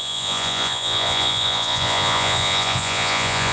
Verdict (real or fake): fake